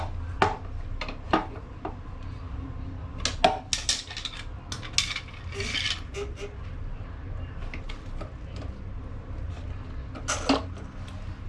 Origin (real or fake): real